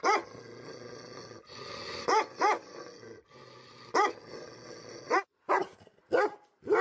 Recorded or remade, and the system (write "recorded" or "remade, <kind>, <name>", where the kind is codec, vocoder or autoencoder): recorded